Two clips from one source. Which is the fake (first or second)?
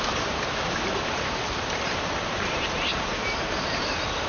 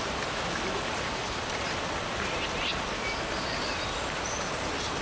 first